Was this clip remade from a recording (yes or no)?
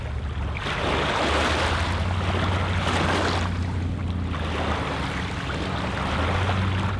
no